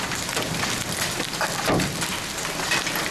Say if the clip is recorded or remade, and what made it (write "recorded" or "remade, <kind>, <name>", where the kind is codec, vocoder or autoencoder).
recorded